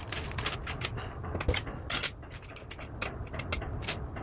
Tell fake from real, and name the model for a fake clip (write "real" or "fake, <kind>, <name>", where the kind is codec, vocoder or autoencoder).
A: real